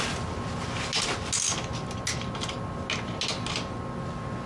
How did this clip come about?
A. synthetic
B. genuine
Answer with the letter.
B